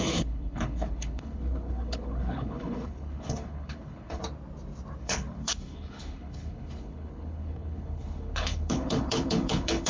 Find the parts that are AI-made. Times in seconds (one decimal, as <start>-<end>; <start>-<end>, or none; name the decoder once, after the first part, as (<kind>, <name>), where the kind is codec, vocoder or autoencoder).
0.0-4.2 (codec, HILCodec); 5.0-9.9